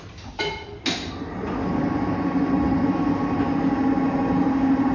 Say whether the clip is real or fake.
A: real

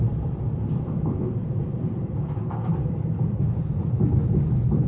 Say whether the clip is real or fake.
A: fake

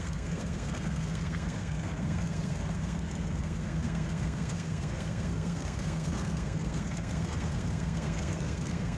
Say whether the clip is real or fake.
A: fake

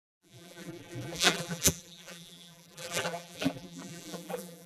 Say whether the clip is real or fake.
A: fake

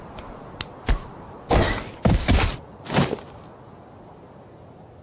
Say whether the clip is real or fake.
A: real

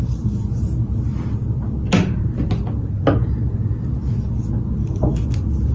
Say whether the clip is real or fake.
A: real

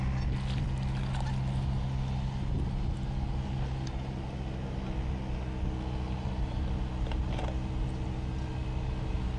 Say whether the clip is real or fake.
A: real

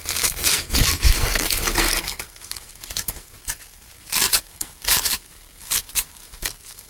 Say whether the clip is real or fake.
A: fake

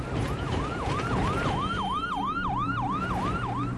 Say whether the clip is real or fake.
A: fake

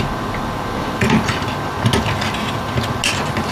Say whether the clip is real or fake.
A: real